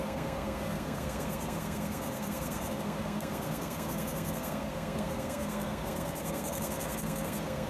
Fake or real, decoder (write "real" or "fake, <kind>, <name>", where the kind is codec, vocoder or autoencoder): fake, codec, SNAC